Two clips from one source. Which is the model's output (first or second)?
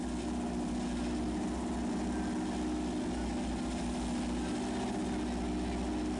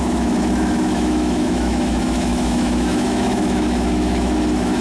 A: second